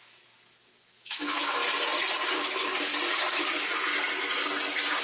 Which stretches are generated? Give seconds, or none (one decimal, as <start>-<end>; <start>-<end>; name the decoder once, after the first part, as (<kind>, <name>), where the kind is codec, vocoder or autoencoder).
0.0-1.6 (autoencoder, DAC-VAE); 2.3-2.7; 3.3-3.9